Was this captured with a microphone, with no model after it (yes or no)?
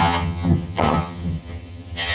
no